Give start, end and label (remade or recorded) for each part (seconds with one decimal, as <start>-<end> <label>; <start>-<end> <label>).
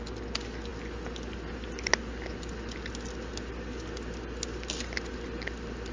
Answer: 0.0-5.9 recorded